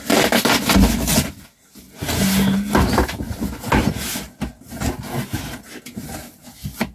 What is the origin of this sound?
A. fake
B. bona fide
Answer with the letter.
B